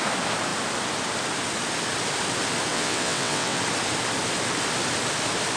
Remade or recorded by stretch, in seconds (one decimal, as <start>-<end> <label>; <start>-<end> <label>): 0.0-2.7 recorded; 2.7-3.6 remade; 3.6-5.6 recorded